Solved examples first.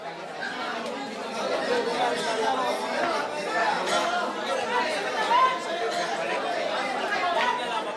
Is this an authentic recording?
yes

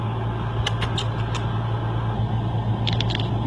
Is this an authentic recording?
yes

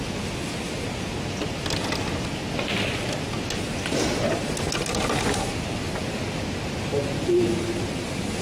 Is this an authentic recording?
yes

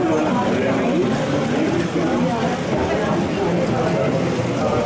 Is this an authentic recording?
yes